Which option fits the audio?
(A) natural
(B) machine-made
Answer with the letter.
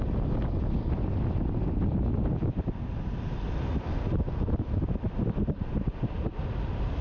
A